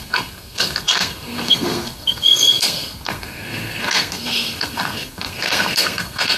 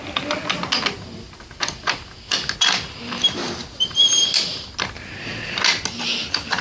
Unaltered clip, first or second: second